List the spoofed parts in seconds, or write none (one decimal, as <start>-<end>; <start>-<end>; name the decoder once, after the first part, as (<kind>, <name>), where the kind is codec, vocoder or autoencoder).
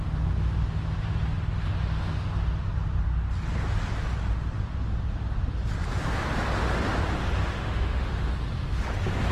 7.4-8.3 (autoencoder, DAC-VAE)